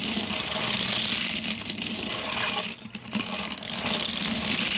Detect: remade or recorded recorded